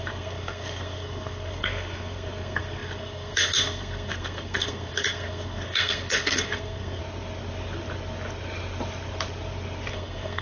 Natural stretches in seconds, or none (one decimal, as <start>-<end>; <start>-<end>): 7.0-9.9